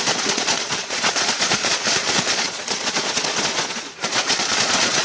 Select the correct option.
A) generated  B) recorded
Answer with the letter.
A